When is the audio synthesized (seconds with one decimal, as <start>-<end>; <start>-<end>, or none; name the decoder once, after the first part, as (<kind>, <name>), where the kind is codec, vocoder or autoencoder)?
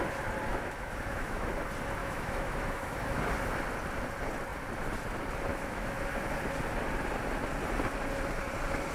0.5-1.5 (autoencoder, DAC-VAE); 2.0-3.2; 5.5-6.0